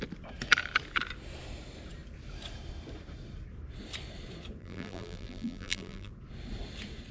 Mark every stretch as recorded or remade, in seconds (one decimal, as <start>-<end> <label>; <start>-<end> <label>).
0.0-4.6 recorded; 4.6-6.1 remade; 6.1-7.1 recorded